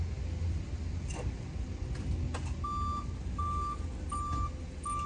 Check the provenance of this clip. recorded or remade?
recorded